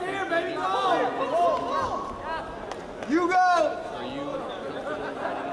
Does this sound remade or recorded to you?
recorded